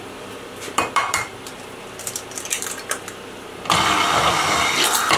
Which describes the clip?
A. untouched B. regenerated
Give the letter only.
B